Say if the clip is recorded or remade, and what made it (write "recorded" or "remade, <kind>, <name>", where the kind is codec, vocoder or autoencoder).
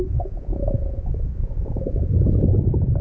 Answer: remade, vocoder, Vocos